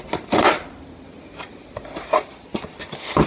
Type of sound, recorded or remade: recorded